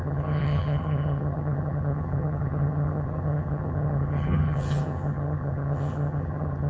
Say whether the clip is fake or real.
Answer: fake